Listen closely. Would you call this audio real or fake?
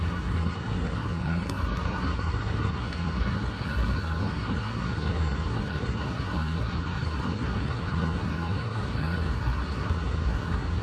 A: fake